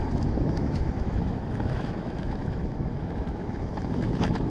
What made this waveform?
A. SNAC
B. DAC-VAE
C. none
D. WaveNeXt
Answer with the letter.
B